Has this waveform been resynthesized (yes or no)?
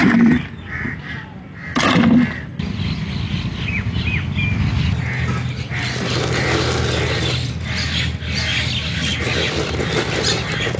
no